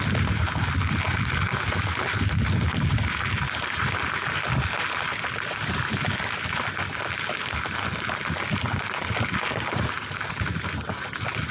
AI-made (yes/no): no